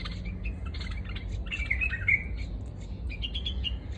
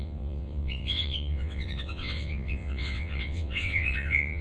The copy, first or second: second